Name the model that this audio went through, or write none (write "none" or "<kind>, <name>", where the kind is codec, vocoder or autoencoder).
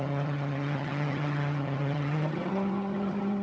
vocoder, HiFi-GAN